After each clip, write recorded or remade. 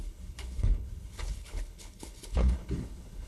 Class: remade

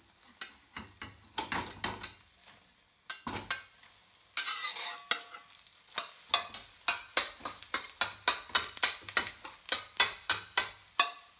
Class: recorded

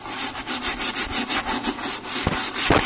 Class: recorded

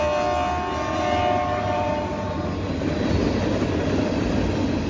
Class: recorded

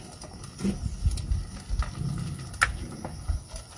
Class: recorded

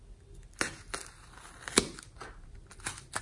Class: recorded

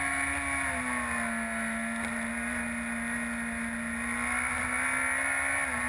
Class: recorded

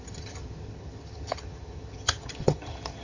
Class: remade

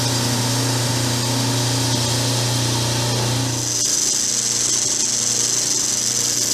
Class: recorded